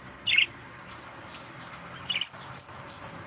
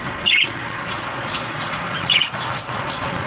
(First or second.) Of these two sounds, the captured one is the first